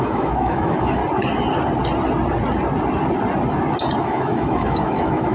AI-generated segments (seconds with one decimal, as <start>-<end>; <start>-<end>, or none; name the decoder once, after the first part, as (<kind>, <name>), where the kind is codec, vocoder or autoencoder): 0.0-1.0 (autoencoder, DAC-VAE); 4.0-5.3